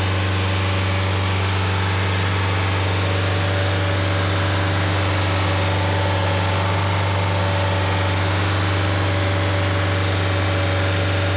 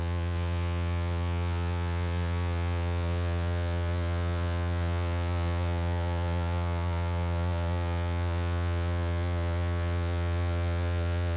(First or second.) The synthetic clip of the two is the second